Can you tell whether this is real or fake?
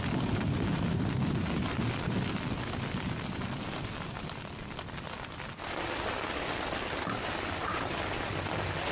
real